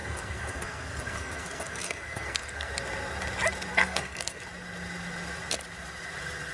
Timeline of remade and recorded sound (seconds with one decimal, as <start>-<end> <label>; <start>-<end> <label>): 0.0-2.7 remade; 2.7-3.7 recorded; 3.7-4.4 remade; 4.4-6.5 recorded